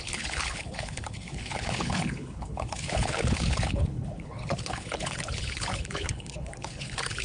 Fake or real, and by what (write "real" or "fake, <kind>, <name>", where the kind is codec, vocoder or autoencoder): fake, codec, HILCodec